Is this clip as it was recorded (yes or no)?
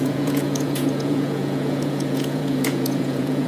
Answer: no